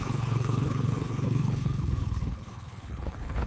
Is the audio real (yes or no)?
no